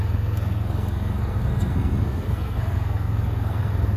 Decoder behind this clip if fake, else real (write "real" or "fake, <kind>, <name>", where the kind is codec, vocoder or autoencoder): fake, codec, SNAC